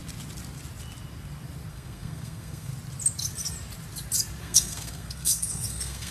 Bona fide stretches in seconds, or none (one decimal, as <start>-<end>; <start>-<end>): 0.0-1.7; 2.7-4.4